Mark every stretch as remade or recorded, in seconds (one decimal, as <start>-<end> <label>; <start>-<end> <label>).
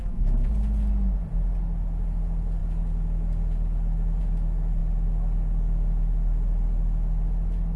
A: 0.0-0.5 remade; 0.5-7.8 recorded